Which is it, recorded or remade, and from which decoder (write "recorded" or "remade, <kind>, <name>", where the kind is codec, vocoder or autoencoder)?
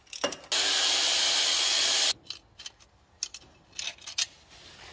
recorded